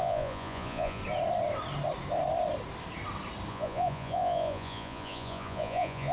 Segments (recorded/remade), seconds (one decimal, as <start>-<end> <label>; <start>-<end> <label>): 0.0-1.0 remade; 1.0-3.5 recorded; 3.5-6.1 remade

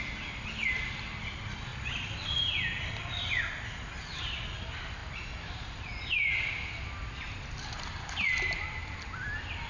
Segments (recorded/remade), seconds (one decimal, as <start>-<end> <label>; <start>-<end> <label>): 0.0-9.7 recorded

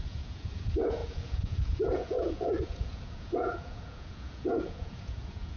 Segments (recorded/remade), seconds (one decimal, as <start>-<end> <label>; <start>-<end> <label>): 0.0-5.6 remade

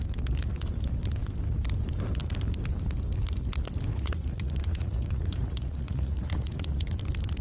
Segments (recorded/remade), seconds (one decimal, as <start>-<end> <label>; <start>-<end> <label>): 0.0-3.9 recorded; 3.9-7.0 remade; 7.0-7.4 recorded

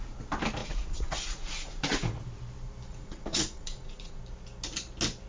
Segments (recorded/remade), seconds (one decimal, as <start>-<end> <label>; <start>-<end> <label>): 0.0-0.6 recorded; 0.6-2.1 remade; 2.1-2.9 recorded; 2.9-4.2 remade; 4.2-5.3 recorded

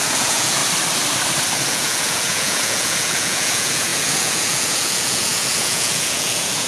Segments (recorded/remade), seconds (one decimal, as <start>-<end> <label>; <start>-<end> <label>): 0.0-0.6 remade; 0.6-1.7 recorded; 1.7-6.7 remade

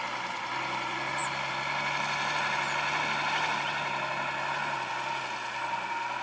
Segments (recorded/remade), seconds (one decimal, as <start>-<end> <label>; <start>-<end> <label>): 0.0-6.2 recorded

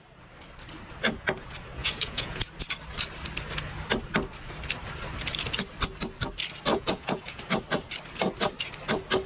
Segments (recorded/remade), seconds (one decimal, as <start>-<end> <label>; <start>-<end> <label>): 0.0-1.8 recorded; 1.8-2.5 remade; 2.5-6.7 recorded; 6.7-7.4 remade; 7.4-9.3 recorded